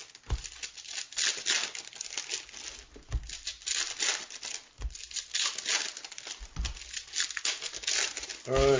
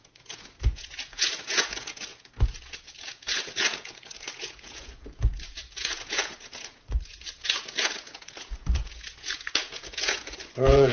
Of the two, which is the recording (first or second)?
first